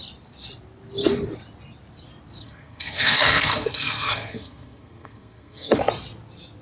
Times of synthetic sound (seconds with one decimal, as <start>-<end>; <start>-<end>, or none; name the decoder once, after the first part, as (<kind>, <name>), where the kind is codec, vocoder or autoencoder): 2.4-5.8 (codec, SNAC)